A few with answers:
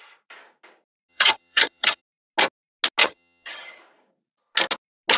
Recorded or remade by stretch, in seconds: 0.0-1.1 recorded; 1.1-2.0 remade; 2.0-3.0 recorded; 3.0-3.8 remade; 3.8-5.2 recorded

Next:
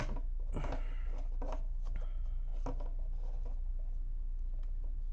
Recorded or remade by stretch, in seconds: 0.0-5.1 recorded

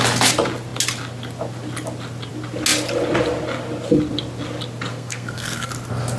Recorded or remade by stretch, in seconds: 0.0-4.9 recorded; 4.9-5.7 remade; 5.7-6.2 recorded